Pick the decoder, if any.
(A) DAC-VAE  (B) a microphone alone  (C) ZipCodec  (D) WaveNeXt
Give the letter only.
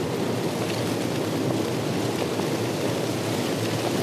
B